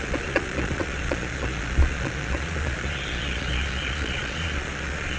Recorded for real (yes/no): no